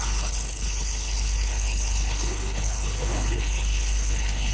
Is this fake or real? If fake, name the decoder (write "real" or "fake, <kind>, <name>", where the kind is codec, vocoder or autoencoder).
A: fake, codec, HILCodec